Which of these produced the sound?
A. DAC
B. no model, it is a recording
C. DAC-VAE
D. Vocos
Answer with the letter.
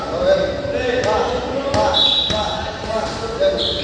B